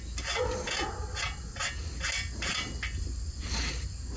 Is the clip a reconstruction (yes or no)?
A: no